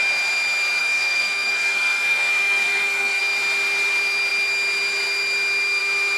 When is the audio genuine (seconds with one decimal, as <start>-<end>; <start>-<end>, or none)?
0.0-0.8; 3.2-6.2